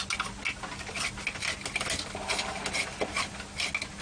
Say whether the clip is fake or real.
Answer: real